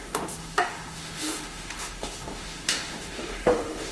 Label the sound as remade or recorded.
remade